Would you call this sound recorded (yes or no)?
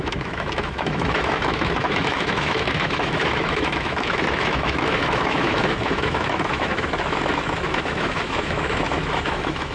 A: no